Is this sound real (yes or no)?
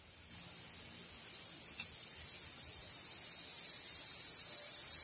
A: yes